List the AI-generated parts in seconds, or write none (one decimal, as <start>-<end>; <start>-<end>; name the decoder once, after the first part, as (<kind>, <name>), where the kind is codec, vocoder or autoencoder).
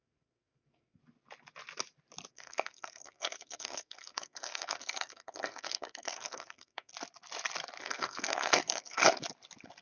0.0-1.0 (codec, SNAC); 2.3-6.9; 7.8-9.0